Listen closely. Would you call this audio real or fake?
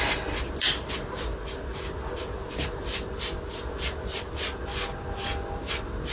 real